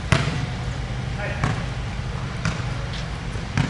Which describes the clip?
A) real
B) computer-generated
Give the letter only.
A